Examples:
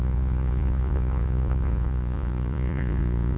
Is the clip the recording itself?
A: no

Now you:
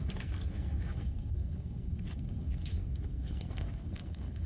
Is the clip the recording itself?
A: no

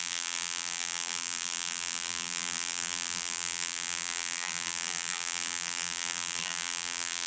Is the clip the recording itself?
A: no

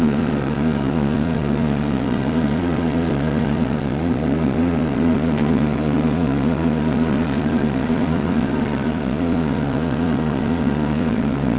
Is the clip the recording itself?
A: no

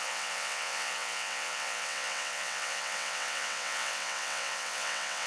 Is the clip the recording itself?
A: no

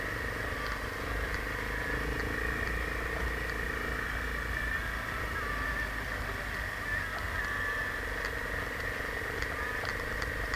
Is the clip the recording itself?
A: yes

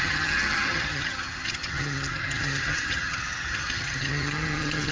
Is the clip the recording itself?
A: no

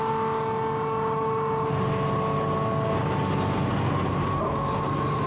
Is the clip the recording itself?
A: yes